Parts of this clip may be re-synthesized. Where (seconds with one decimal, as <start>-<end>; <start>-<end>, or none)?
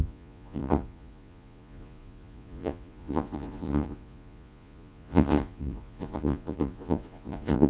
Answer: 0.0-7.7